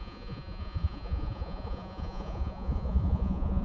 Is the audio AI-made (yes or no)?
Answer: yes